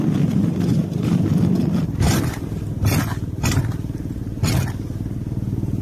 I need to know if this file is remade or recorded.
recorded